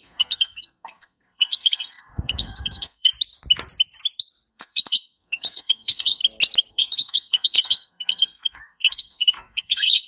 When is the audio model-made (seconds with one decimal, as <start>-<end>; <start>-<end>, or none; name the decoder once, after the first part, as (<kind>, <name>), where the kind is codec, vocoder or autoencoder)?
0.0-3.1 (codec, SNAC); 4.5-6.2; 6.7-10.1